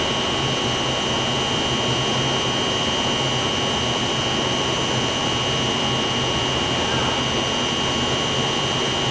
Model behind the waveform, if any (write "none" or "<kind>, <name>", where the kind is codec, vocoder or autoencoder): none